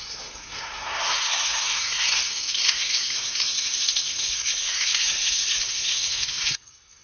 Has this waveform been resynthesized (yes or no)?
yes